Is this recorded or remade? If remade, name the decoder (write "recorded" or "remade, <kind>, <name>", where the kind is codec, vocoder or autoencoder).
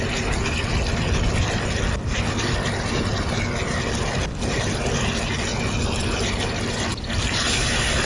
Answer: recorded